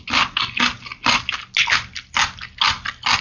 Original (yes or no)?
yes